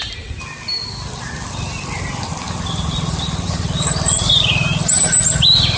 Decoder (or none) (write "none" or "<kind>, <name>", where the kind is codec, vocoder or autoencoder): none